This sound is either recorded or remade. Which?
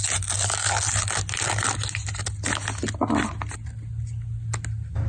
recorded